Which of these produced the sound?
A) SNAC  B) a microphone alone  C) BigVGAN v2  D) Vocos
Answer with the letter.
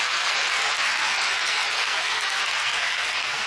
A